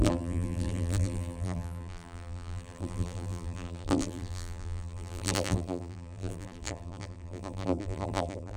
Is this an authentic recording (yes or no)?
no